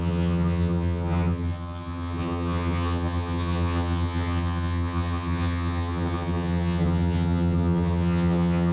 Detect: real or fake fake